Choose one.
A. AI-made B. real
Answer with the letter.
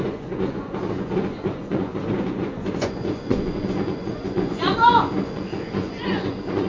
A